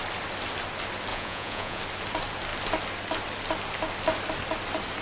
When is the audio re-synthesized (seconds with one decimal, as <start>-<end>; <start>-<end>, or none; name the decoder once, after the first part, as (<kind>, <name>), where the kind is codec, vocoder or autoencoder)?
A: 1.1-1.8 (vocoder, Vocos)